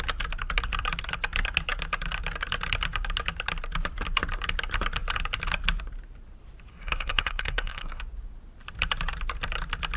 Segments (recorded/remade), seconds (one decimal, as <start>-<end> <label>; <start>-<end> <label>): 0.0-6.7 recorded; 6.7-8.0 remade; 8.0-10.0 recorded